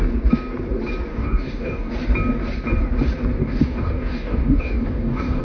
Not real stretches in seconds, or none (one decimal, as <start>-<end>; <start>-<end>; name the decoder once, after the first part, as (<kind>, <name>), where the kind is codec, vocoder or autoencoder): 1.1-1.9 (codec, DAC); 3.4-5.4

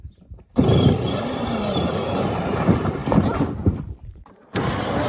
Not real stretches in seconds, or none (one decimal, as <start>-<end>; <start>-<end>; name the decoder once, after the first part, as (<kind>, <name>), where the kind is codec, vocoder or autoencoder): 0.0-5.1 (vocoder, BigVGAN v2)

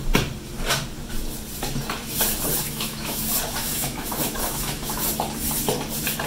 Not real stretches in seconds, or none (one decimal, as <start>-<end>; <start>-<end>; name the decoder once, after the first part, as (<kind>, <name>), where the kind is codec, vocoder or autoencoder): 2.6-3.2 (autoencoder, DAC-VAE); 3.6-5.1

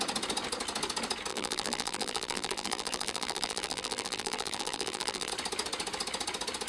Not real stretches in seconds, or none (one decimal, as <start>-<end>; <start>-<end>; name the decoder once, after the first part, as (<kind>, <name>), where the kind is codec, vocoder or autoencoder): 1.3-5.3 (vocoder, BigVGAN v2)